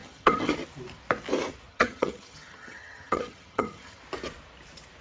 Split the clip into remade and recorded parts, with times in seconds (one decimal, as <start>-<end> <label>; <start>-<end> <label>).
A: 0.0-0.5 remade; 0.5-1.7 recorded; 1.7-4.0 remade; 4.0-5.0 recorded